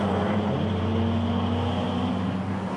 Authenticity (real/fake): real